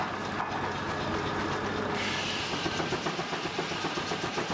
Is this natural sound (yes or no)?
yes